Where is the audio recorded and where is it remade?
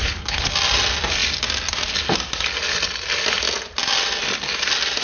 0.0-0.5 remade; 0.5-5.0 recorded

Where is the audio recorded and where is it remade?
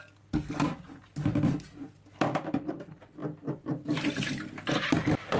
0.0-5.4 recorded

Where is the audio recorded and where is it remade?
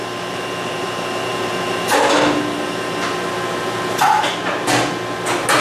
0.0-5.6 recorded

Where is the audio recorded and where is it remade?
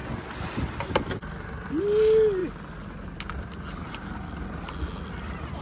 0.0-5.6 recorded